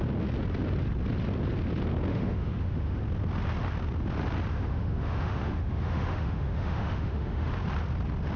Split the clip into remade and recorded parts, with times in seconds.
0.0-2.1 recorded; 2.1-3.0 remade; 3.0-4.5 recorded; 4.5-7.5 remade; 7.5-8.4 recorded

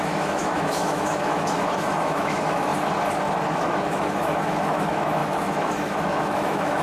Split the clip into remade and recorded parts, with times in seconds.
0.0-2.7 remade; 2.7-3.5 recorded; 3.5-6.8 remade

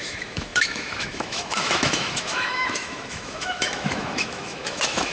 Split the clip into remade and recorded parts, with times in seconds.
0.0-5.1 remade

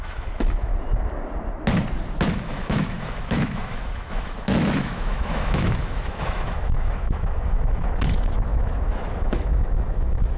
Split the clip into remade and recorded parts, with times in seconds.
0.0-0.7 remade; 0.7-2.3 recorded; 2.3-10.4 remade

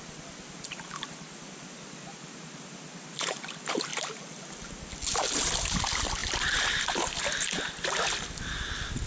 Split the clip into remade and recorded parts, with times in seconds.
0.0-9.1 recorded

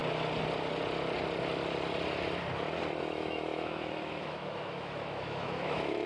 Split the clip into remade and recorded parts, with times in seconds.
0.0-3.0 recorded; 3.0-6.1 remade